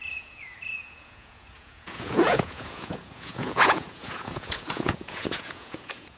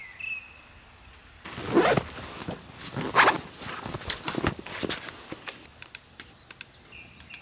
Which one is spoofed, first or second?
first